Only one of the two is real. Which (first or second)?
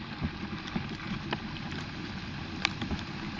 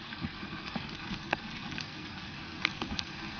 first